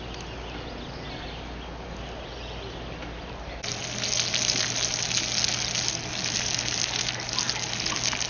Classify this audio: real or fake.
real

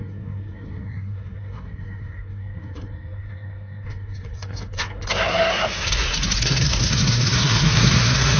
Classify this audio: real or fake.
fake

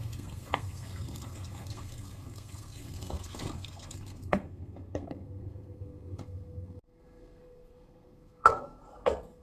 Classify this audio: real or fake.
fake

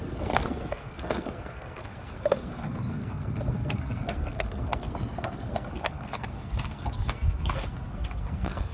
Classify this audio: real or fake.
fake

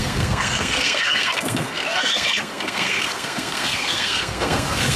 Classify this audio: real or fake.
fake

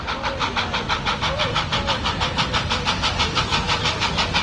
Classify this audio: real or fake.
real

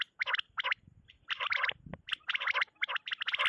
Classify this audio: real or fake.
real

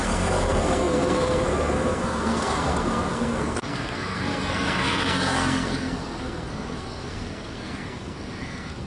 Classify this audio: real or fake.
fake